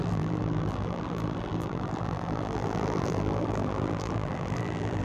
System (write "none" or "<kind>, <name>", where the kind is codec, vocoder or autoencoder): vocoder, BigVGAN v2